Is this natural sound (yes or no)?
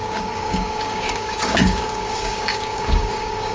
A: no